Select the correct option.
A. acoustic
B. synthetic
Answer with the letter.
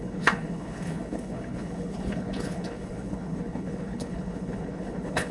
B